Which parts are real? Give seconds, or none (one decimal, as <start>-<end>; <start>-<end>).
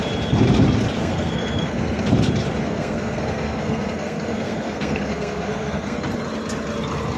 0.0-1.0; 2.1-2.6; 6.0-7.2